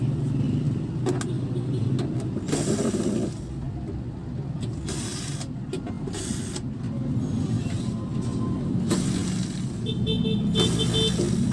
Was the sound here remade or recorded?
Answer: recorded